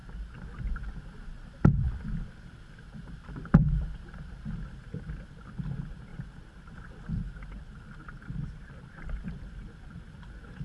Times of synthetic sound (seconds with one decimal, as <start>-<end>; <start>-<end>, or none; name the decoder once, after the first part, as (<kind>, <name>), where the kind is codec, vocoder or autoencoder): 0.9-6.1 (vocoder, BigVGAN v2); 7.6-10.6